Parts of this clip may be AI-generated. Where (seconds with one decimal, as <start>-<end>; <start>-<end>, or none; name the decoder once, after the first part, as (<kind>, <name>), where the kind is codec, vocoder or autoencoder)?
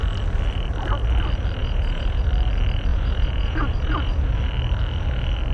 1.6-2.3 (vocoder, Vocos); 2.9-4.3